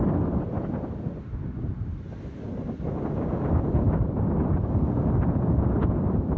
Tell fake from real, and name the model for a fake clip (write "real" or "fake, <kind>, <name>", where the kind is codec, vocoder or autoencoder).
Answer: real